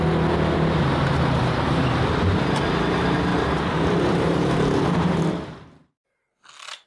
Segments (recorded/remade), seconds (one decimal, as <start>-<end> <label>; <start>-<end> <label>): 0.0-3.3 recorded; 3.3-6.0 remade; 6.0-6.9 recorded